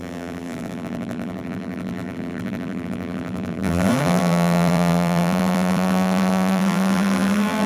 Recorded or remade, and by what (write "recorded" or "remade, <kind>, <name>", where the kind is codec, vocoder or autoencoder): remade, vocoder, BigVGAN v2